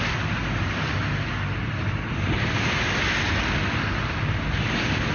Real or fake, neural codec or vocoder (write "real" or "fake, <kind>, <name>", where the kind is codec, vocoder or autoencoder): real